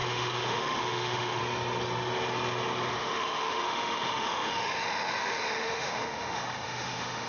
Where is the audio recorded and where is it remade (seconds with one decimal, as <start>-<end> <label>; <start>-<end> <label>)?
0.0-1.4 remade; 1.4-2.9 recorded; 2.9-7.3 remade